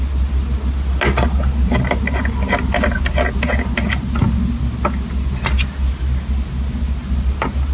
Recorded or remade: recorded